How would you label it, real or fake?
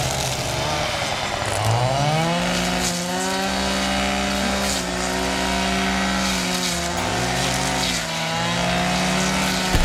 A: real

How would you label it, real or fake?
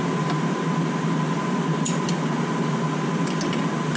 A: real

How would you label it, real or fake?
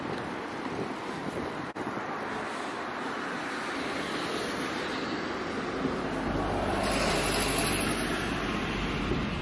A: real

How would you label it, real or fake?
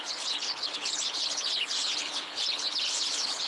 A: fake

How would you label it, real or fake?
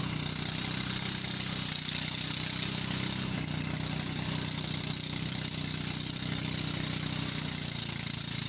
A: real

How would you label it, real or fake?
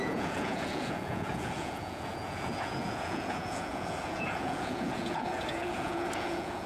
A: fake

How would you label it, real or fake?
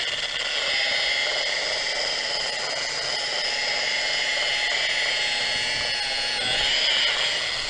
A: real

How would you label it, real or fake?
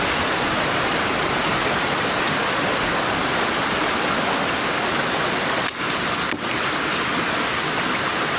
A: real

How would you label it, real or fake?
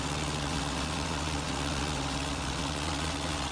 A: fake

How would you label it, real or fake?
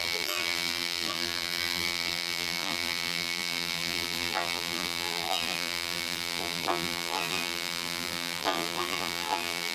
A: fake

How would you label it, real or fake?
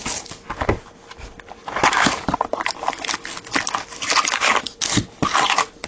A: real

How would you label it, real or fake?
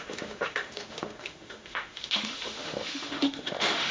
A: fake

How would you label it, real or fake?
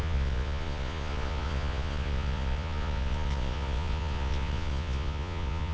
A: fake